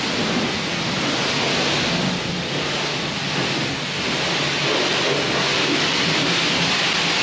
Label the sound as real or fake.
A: real